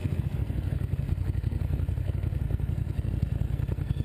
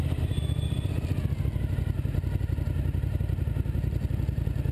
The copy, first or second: first